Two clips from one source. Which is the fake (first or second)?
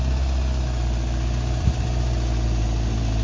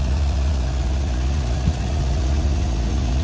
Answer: second